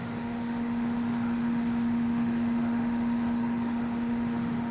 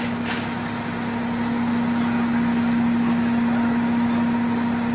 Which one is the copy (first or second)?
first